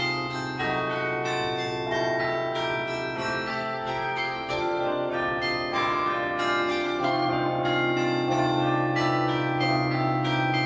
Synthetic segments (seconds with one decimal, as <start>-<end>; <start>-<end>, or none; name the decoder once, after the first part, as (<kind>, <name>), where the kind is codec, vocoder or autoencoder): 3.5-5.1 (codec, SNAC); 6.7-7.3